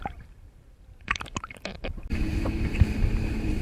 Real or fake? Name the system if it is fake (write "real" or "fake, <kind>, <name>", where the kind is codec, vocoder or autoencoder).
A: fake, vocoder, BigVGAN v2